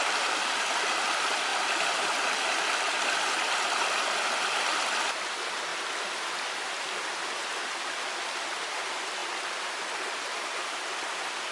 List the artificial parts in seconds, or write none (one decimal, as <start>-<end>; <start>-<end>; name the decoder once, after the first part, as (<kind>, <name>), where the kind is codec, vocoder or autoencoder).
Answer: 0.0-5.7 (vocoder, BigVGAN v2); 6.3-9.2; 10.0-11.5